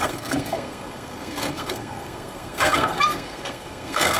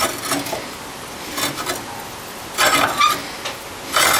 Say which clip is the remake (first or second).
first